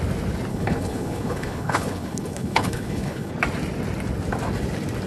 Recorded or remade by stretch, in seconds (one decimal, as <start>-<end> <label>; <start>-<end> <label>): 0.0-0.5 recorded; 0.5-3.3 remade; 3.3-5.1 recorded